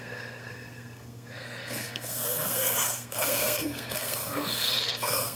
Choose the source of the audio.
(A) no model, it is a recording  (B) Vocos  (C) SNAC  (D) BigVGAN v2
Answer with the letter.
C